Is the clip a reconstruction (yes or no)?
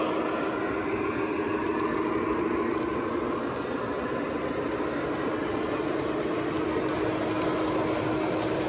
no